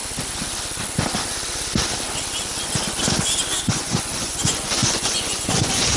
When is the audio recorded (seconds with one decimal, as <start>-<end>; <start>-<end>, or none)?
0.0-3.6